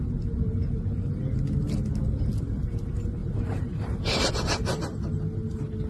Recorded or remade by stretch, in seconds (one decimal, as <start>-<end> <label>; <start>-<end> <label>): 0.0-3.2 recorded; 3.2-4.3 remade; 4.3-5.9 recorded

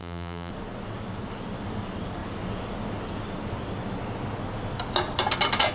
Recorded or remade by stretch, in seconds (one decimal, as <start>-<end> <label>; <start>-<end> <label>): 0.0-0.5 remade; 0.5-5.7 recorded

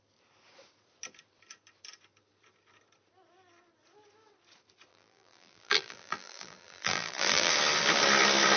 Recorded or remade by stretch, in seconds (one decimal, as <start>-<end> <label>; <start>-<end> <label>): 0.0-4.9 recorded; 4.9-7.5 remade; 7.5-8.6 recorded

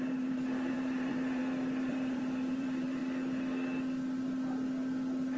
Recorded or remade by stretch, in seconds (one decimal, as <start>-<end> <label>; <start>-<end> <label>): 0.0-1.4 remade; 1.4-1.9 recorded; 1.9-3.0 remade; 3.0-5.4 recorded